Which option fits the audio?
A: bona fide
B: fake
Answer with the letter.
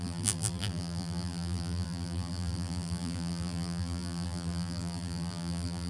B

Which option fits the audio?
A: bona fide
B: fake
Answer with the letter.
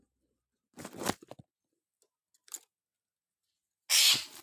A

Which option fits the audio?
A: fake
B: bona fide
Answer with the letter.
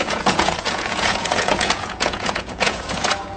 A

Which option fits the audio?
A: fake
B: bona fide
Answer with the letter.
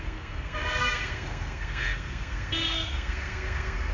A